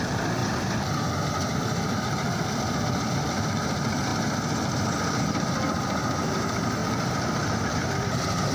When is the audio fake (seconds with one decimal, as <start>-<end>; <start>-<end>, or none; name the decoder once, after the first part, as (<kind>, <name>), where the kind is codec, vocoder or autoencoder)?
0.0-0.4 (vocoder, BigVGAN v2); 1.3-4.1; 6.3-6.8; 7.7-8.5